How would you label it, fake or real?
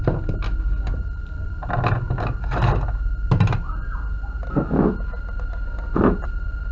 real